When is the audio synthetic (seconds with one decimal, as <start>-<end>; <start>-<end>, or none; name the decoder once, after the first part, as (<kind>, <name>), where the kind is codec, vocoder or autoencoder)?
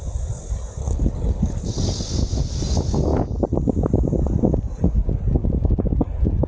0.8-1.6 (codec, HILCodec)